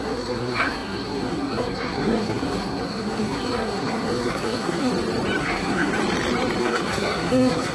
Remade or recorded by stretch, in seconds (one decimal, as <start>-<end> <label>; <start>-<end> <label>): 0.0-4.9 remade; 4.9-5.4 recorded; 5.4-5.9 remade; 5.9-6.6 recorded; 6.6-7.7 remade